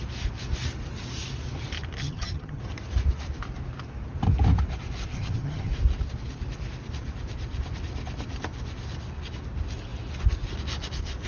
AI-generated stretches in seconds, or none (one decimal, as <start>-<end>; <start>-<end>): 2.0-2.6; 5.1-5.7